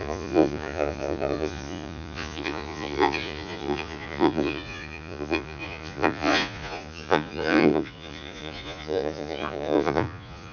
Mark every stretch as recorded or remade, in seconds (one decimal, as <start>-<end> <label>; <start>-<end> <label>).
0.0-10.5 remade